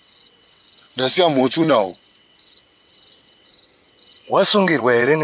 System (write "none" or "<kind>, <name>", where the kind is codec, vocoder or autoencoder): vocoder, WaveNeXt